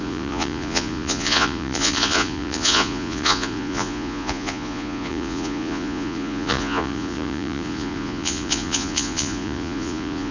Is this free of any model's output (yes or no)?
no